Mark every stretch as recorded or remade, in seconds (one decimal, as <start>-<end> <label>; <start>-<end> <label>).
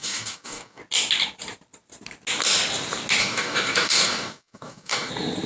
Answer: 0.0-0.8 remade; 0.8-3.2 recorded; 3.2-5.1 remade; 5.1-5.5 recorded